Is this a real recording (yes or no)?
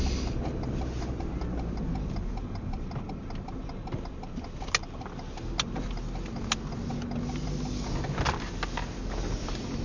yes